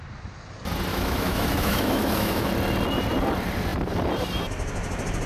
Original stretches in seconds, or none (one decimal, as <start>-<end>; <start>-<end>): 0.0-0.9; 2.5-5.3